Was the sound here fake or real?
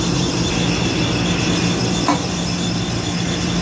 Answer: real